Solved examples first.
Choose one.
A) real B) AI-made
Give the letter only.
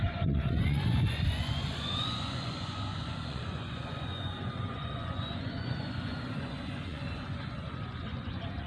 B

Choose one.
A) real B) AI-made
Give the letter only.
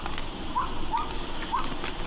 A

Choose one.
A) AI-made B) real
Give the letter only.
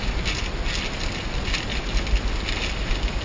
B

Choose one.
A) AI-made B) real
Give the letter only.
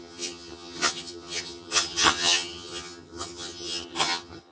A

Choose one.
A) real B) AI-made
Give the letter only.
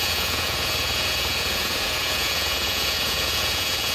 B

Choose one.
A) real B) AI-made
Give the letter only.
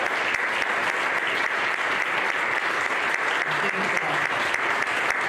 A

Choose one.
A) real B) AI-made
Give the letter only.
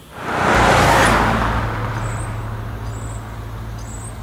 A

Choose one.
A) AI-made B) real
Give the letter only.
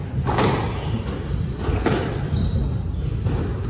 B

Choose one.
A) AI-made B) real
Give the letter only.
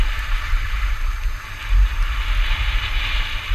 B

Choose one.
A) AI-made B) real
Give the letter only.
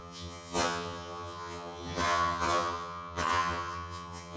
A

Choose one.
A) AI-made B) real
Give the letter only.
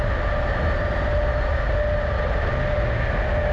B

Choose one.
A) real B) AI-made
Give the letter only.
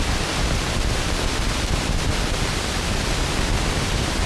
A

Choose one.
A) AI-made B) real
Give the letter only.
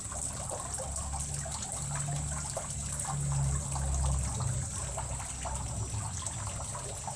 B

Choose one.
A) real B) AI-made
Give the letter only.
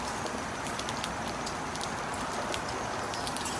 A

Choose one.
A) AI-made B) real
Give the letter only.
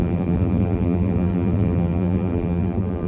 A